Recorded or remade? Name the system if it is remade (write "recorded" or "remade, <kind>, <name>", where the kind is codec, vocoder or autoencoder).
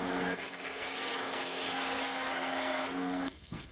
remade, codec, SNAC